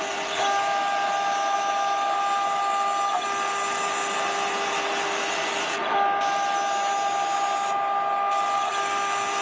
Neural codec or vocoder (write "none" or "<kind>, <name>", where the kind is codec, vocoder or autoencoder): none